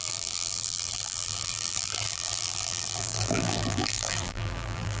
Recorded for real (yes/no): no